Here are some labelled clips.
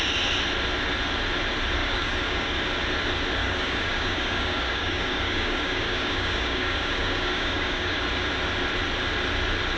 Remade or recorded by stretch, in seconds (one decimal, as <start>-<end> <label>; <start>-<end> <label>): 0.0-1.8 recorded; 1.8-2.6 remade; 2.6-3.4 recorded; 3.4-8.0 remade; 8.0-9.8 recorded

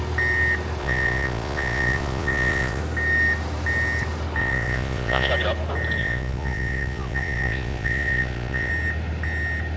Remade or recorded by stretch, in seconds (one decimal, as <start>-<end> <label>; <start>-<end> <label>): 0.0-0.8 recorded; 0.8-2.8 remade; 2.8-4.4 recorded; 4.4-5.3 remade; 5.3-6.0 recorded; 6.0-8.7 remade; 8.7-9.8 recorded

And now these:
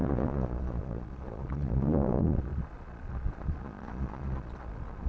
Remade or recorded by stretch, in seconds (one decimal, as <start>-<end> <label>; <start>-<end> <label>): 0.0-5.1 remade

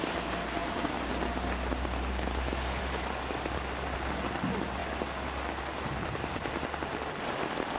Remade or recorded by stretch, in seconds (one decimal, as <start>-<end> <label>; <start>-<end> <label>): 0.0-7.8 remade

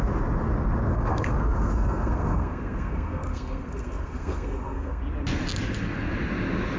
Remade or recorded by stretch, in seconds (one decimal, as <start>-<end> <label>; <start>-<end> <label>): 0.0-0.9 recorded; 0.9-5.0 remade; 5.0-6.8 recorded

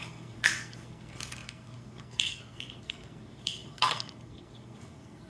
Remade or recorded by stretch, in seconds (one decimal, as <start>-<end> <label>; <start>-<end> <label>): 0.0-5.3 remade

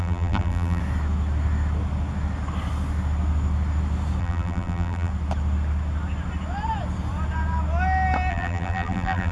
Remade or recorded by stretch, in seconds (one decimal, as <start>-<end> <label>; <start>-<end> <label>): 0.0-0.8 remade; 0.8-4.2 recorded; 4.2-5.1 remade; 5.1-8.3 recorded; 8.3-9.3 remade